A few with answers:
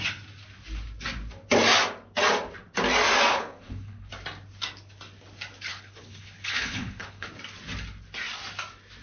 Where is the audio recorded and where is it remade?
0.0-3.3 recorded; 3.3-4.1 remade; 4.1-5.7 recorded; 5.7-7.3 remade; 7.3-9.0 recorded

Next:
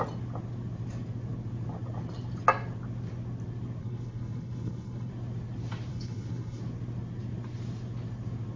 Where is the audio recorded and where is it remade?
0.0-3.8 recorded; 3.8-5.1 remade; 5.1-5.9 recorded; 5.9-6.6 remade; 6.6-8.6 recorded

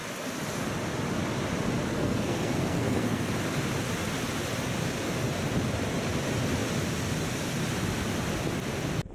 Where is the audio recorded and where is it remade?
0.0-1.9 recorded; 1.9-3.3 remade; 3.3-9.1 recorded

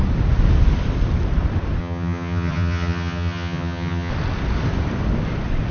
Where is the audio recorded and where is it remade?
0.0-1.8 recorded; 1.8-4.1 remade; 4.1-5.7 recorded

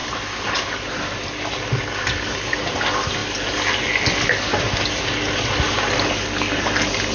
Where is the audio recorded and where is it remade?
0.0-7.1 recorded

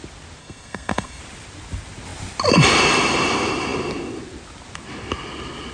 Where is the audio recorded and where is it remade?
0.0-0.4 recorded; 0.4-1.2 remade; 1.2-5.7 recorded

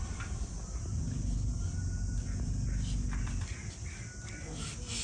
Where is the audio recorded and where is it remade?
0.0-5.0 recorded